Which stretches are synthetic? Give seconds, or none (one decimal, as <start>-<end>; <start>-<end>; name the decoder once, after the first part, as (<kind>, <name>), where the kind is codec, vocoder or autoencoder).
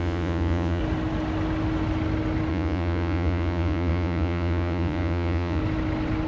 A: 0.0-0.8 (vocoder, Vocos); 2.5-5.6